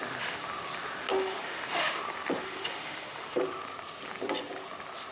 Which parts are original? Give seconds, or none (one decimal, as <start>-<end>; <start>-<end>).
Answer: 0.0-1.1; 2.0-2.4; 3.4-5.1